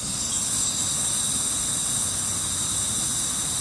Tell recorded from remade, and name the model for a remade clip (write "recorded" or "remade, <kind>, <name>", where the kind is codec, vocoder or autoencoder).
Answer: recorded